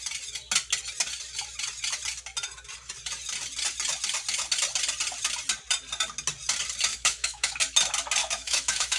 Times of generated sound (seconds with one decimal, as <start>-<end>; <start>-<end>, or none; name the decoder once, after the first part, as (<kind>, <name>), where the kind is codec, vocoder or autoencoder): 6.9-7.6 (autoencoder, DAC-VAE); 8.2-9.0